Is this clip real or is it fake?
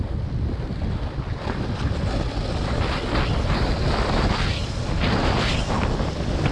real